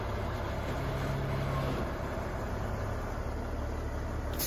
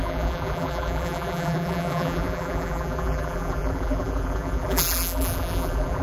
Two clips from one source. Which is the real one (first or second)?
first